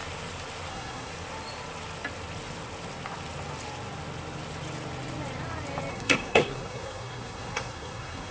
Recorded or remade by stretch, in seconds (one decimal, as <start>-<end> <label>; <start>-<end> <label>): 0.0-0.7 recorded; 0.7-1.1 remade; 1.1-5.9 recorded; 5.9-8.3 remade